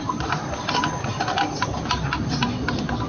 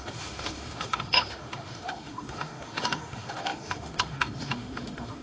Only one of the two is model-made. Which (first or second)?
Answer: second